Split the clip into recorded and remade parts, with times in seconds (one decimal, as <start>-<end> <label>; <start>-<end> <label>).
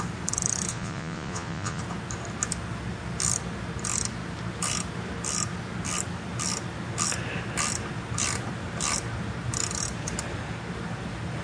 0.0-0.7 recorded; 0.7-1.8 remade; 1.8-11.4 recorded